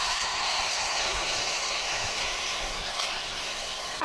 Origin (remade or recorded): remade